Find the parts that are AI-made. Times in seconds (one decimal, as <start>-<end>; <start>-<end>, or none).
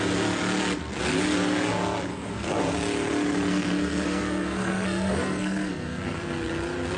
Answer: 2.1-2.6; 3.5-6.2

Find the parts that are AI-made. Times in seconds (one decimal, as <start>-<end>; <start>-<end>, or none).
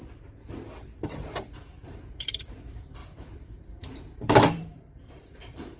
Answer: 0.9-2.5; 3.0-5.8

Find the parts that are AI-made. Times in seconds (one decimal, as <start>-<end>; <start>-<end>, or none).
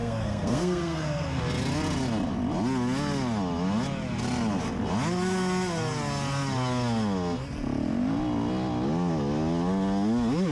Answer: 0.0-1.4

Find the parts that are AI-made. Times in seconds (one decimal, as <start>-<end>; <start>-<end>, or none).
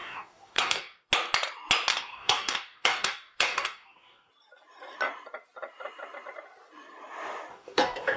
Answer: 0.0-1.1; 1.9-4.3; 7.5-8.2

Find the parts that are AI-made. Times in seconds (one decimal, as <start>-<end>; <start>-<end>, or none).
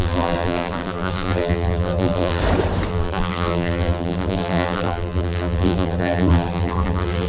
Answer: 0.0-2.4; 2.9-7.3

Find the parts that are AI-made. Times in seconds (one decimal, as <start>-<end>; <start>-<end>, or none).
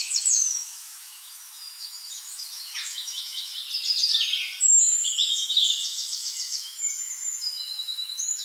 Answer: 0.0-3.5; 4.6-8.4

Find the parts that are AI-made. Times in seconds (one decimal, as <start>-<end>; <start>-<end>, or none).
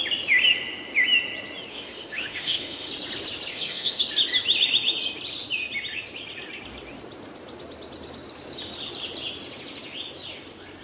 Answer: 1.7-2.9; 3.5-4.0